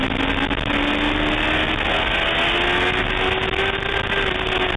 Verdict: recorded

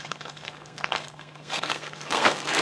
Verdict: remade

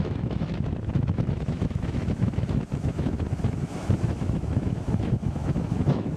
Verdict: remade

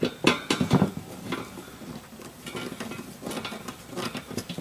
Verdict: recorded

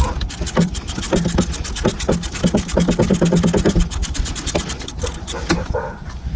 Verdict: recorded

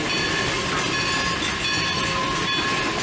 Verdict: recorded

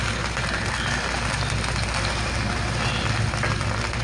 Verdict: recorded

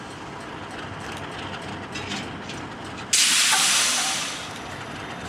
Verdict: recorded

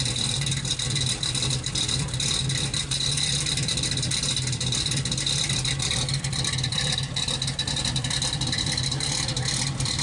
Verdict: remade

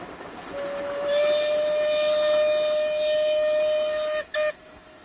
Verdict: recorded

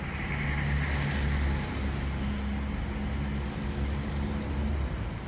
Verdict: recorded